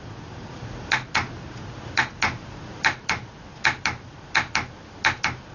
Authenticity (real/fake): real